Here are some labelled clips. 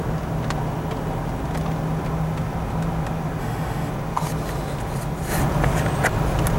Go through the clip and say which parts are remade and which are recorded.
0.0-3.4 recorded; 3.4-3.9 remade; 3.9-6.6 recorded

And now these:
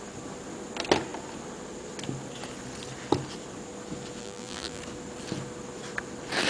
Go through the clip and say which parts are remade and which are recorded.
0.0-4.2 recorded; 4.2-4.8 remade; 4.8-6.5 recorded

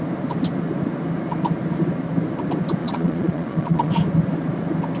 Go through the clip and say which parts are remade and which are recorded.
0.0-2.8 recorded; 2.8-3.9 remade; 3.9-5.0 recorded

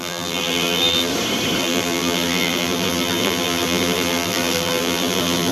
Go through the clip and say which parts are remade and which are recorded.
0.0-1.1 remade; 1.1-1.6 recorded; 1.6-5.5 remade

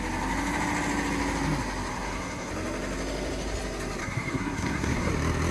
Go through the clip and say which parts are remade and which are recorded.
0.0-1.9 recorded; 1.9-2.5 remade; 2.5-4.0 recorded; 4.0-5.1 remade; 5.1-5.5 recorded

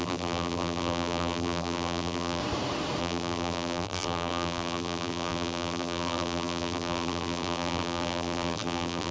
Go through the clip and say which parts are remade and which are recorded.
0.0-2.4 remade; 2.4-3.0 recorded; 3.0-9.1 remade

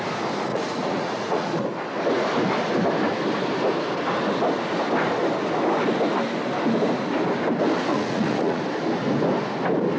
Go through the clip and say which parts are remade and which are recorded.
0.0-0.5 recorded; 0.5-1.5 remade; 1.5-7.9 recorded; 7.9-8.6 remade; 8.6-10.0 recorded

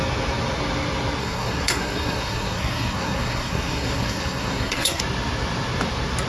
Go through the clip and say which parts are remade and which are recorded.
0.0-1.2 recorded; 1.2-5.0 remade; 5.0-6.3 recorded